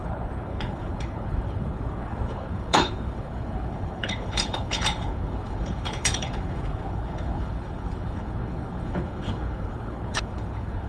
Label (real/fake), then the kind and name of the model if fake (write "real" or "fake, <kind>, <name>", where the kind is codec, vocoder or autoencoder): fake, codec, HILCodec